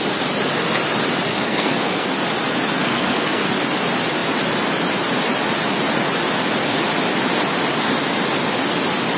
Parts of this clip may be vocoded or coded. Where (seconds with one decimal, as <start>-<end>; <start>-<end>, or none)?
1.3-2.1; 2.8-3.5